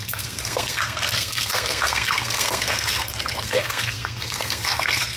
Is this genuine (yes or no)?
no